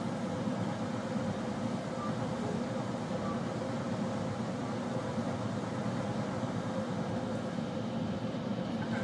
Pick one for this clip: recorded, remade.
recorded